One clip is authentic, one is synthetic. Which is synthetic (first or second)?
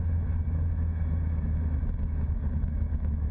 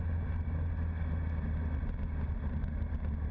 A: first